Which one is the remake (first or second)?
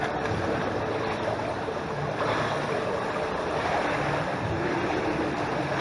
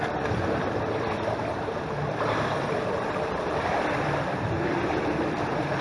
second